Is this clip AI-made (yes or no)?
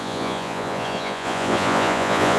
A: yes